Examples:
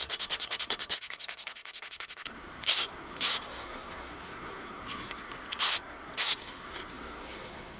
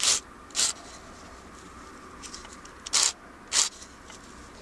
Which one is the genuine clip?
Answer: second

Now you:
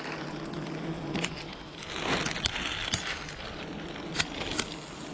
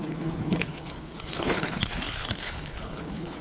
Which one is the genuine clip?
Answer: first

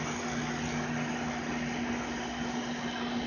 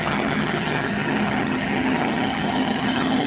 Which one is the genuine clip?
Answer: first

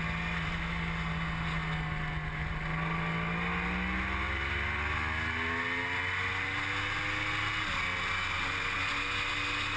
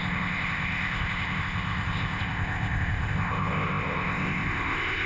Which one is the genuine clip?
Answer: first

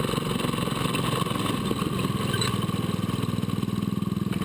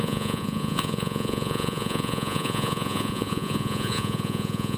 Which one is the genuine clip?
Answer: first